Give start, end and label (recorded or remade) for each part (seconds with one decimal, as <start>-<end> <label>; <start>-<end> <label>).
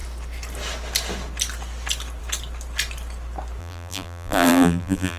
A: 0.0-3.6 recorded; 3.6-5.2 remade